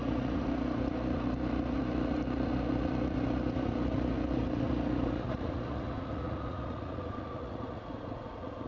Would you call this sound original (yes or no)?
no